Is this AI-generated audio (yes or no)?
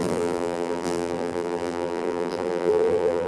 yes